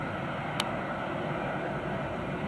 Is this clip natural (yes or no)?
no